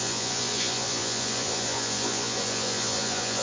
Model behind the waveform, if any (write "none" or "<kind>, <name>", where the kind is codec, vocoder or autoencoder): vocoder, Vocos